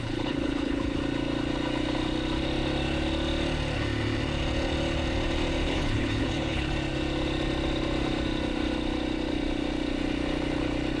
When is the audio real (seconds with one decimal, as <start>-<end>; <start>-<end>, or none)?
1.0-5.6; 6.7-11.0